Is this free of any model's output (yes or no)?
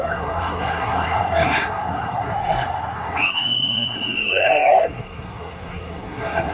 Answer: no